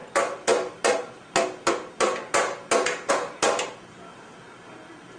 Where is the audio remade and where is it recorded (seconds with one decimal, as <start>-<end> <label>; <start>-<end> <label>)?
0.0-5.2 recorded